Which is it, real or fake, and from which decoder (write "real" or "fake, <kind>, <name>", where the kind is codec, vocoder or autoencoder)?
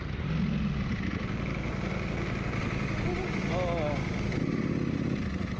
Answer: real